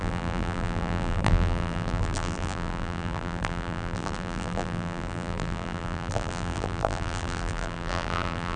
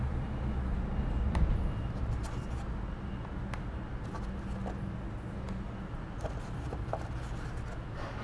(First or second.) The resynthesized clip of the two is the first